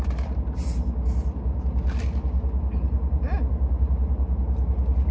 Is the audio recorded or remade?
recorded